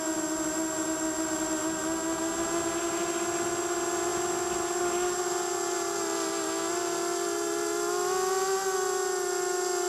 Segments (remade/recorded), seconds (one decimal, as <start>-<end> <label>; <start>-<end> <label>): 0.0-9.9 recorded